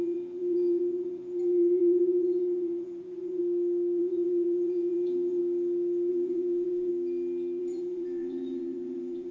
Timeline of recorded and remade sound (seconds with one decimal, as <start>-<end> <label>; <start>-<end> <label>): 0.0-3.4 remade; 3.4-4.0 recorded; 4.0-5.4 remade; 5.4-6.1 recorded; 6.1-6.9 remade; 6.9-7.6 recorded; 7.6-9.3 remade